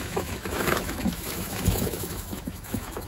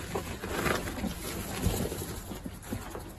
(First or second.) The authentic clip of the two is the second